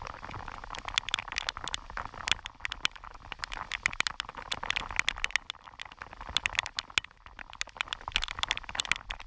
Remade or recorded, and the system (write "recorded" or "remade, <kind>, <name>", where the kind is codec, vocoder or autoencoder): recorded